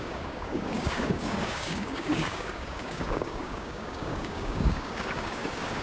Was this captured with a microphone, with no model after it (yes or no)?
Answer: no